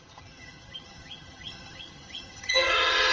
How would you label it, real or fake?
fake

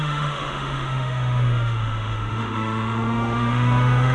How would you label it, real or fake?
fake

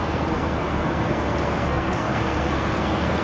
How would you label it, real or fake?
fake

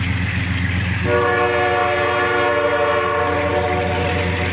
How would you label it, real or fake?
real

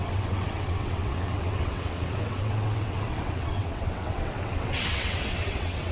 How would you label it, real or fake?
fake